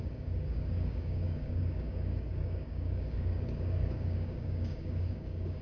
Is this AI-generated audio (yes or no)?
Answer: yes